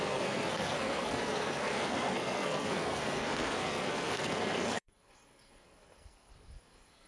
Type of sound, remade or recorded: remade